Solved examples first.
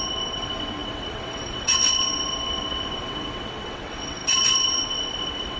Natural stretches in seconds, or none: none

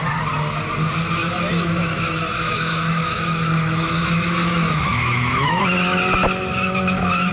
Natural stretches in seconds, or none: 0.0-1.2; 5.6-6.5